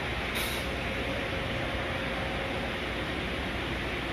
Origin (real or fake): real